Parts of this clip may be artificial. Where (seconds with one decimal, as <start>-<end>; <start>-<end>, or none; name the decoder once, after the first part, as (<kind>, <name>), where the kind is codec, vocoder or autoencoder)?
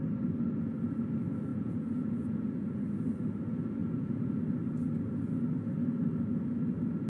1.5-2.8 (vocoder, Vocos); 3.8-4.4